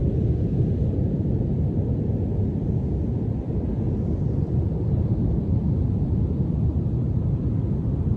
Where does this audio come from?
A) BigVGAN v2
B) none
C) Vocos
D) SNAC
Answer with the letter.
B